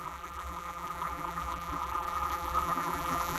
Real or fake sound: fake